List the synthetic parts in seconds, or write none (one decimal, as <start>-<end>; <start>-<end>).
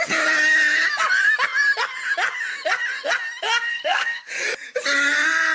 3.7-4.3